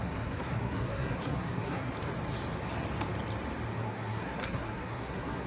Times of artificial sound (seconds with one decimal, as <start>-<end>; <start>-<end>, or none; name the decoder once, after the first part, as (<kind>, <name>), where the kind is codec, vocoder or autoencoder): 0.0-1.9 (codec, SNAC); 3.7-5.5